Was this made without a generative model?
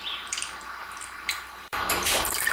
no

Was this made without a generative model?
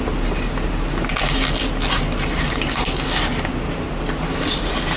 yes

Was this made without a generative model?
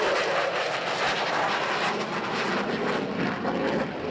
yes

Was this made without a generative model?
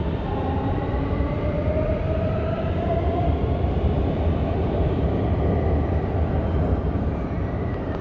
yes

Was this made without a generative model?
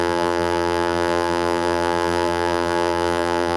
no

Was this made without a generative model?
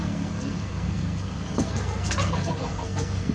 no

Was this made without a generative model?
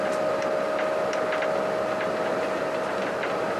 yes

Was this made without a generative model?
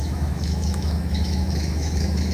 no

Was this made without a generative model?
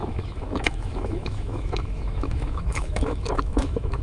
no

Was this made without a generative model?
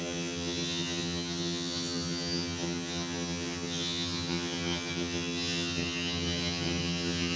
no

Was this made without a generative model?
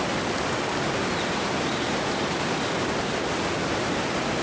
yes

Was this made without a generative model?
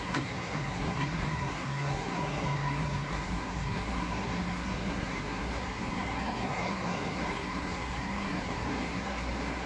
no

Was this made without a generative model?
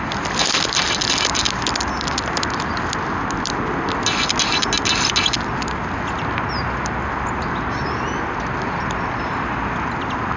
yes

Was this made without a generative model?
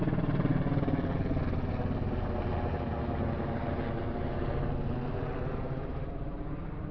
yes